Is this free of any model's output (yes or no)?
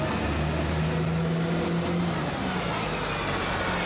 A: yes